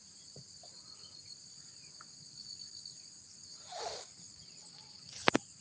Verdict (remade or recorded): recorded